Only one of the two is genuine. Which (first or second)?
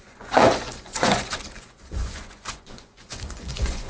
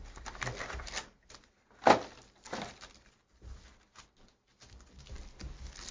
second